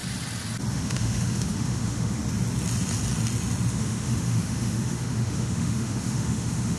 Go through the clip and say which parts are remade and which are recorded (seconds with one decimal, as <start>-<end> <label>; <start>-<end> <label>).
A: 0.0-0.7 recorded; 0.7-2.2 remade; 2.2-3.7 recorded; 3.7-6.8 remade